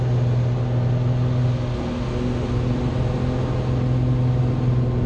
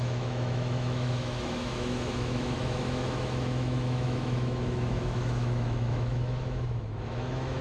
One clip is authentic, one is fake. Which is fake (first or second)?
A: second